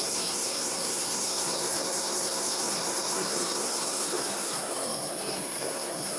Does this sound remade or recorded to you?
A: remade